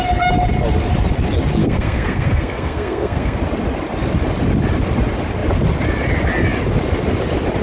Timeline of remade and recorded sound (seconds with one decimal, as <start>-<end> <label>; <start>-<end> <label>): 0.0-1.6 recorded; 1.6-3.4 remade; 3.4-7.6 recorded